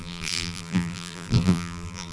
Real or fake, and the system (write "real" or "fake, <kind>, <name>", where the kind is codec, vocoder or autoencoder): fake, vocoder, BigVGAN v2